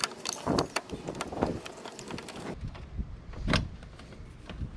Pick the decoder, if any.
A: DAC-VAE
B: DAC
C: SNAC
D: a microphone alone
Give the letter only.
D